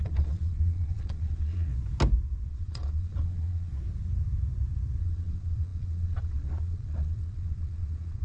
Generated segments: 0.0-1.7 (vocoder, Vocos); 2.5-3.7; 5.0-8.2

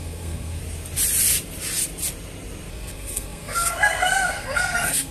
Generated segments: 0.0-0.6 (codec, SNAC); 2.7-5.1

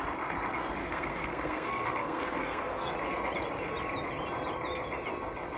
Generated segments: 0.8-2.9 (codec, SNAC)

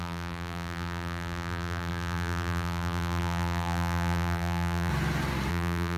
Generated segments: 0.0-4.9 (vocoder, BigVGAN v2); 5.5-6.0